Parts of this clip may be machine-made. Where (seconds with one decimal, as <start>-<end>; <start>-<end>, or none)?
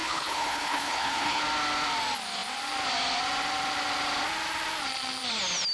0.0-1.4